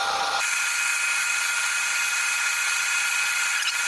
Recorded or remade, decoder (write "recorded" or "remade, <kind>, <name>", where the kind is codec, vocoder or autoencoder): recorded